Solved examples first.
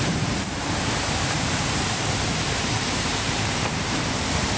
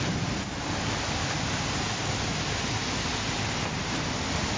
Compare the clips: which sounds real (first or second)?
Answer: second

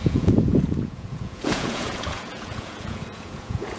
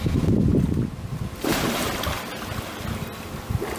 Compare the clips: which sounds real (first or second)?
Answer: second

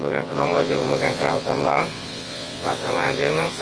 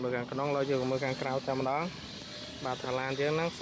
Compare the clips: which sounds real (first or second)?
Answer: second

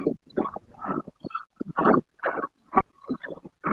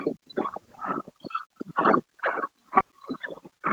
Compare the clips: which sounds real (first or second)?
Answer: first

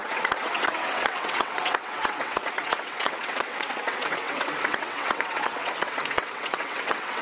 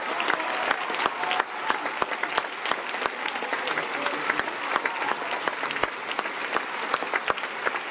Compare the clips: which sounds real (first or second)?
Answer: second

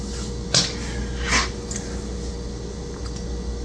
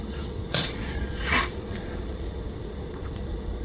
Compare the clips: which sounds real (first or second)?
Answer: first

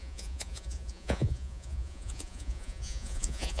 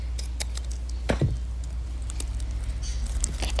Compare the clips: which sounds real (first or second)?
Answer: second